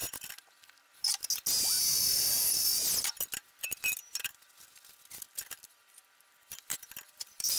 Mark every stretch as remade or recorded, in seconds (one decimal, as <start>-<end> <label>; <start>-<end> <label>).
0.0-3.3 recorded; 3.3-7.6 remade

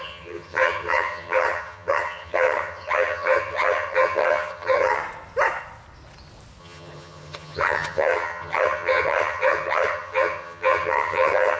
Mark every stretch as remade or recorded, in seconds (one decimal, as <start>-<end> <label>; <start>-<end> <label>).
0.0-5.0 remade; 5.0-6.6 recorded; 6.6-11.6 remade

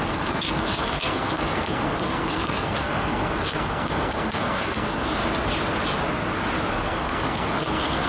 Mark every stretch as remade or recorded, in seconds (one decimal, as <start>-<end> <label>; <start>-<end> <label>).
0.0-5.2 remade; 5.2-6.7 recorded; 6.7-8.1 remade

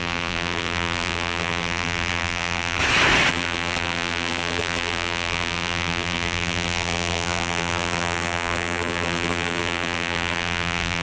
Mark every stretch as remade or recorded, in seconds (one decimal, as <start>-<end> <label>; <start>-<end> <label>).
0.0-2.8 remade; 2.8-3.3 recorded; 3.3-11.0 remade

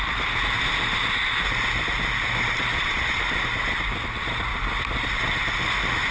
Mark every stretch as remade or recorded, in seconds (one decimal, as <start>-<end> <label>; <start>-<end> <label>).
0.0-2.7 recorded; 2.7-3.2 remade; 3.2-6.1 recorded

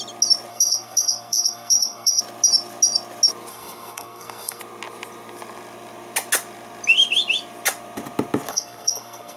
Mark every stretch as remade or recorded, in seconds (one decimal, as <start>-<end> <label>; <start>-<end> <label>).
0.0-0.5 recorded; 0.5-2.2 remade; 2.2-3.5 recorded; 3.5-4.6 remade; 4.6-8.5 recorded; 8.5-9.4 remade

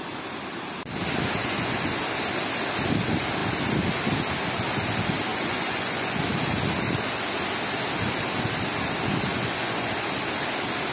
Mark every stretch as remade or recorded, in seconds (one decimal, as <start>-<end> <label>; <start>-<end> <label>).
0.0-1.4 recorded; 1.4-2.0 remade; 2.0-5.3 recorded; 5.3-6.2 remade; 6.2-9.3 recorded; 9.3-9.9 remade; 9.9-10.9 recorded

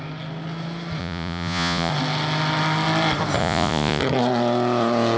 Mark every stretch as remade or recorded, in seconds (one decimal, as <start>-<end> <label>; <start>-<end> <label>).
0.0-1.0 recorded; 1.0-1.9 remade; 1.9-3.4 recorded; 3.4-4.0 remade; 4.0-5.2 recorded